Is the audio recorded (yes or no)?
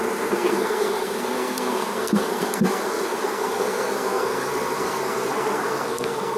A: no